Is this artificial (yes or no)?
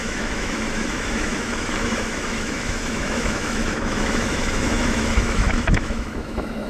yes